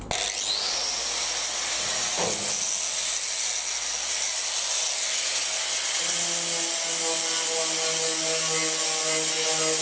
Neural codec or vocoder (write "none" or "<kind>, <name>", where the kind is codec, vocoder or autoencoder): none